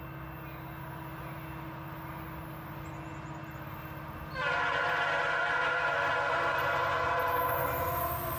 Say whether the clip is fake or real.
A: real